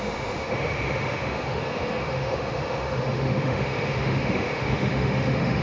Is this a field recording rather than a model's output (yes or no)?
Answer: no